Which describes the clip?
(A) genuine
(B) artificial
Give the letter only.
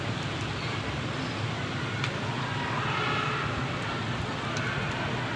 A